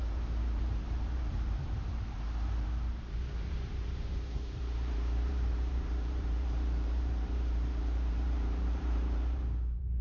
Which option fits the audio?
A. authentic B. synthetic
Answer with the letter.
B